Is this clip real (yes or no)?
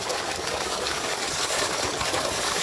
no